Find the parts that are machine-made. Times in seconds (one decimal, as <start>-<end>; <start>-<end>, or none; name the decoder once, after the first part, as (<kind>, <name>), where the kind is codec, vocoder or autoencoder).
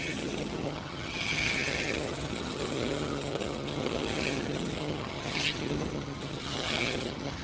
0.0-7.4 (vocoder, HiFi-GAN)